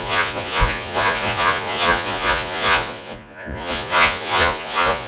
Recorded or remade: remade